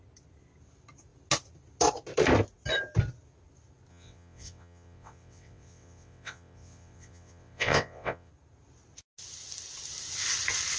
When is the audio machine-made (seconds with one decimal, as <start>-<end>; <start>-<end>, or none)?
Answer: 3.9-8.3